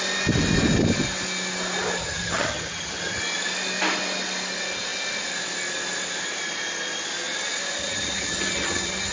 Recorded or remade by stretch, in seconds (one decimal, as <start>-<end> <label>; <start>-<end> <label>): 0.0-2.0 recorded; 2.0-3.2 remade; 3.2-7.8 recorded; 7.8-9.1 remade

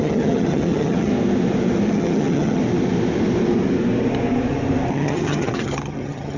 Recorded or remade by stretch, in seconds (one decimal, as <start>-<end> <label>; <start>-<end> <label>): 0.0-1.1 remade; 1.1-1.9 recorded; 1.9-2.6 remade; 2.6-4.9 recorded; 4.9-6.4 remade

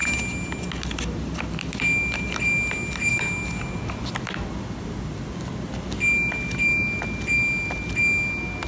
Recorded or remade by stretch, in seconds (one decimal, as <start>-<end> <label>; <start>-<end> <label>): 0.0-8.7 recorded

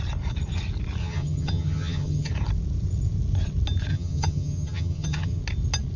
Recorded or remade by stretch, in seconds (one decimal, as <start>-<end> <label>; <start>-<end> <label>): 0.0-1.0 recorded; 1.0-2.3 remade; 2.3-3.9 recorded; 3.9-5.4 remade; 5.4-6.0 recorded

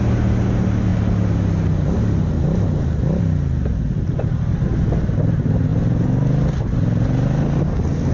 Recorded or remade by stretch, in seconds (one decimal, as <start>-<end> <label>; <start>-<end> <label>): 0.0-8.1 recorded